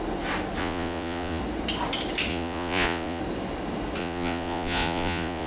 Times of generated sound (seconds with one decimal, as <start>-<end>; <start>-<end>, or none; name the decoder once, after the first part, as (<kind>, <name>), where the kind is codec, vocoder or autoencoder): 0.6-1.4 (vocoder, Vocos); 2.3-3.2; 4.0-5.5